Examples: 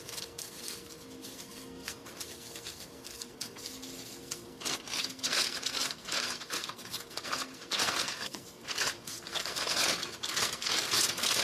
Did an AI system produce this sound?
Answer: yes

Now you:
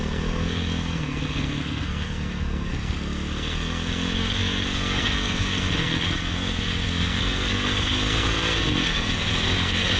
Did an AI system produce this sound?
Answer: yes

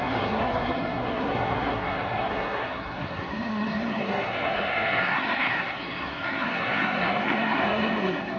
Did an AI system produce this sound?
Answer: yes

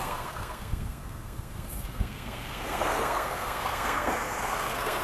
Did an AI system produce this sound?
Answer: yes